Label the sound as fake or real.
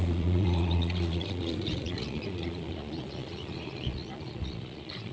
fake